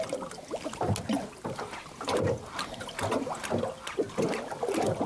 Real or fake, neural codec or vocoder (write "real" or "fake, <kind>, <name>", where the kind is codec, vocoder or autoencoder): real